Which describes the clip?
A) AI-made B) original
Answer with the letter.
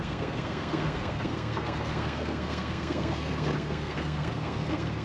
A